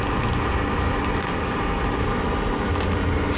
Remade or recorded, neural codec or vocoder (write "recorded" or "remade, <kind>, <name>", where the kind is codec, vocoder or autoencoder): recorded